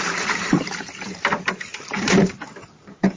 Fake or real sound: fake